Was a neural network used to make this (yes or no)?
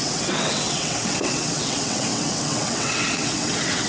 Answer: yes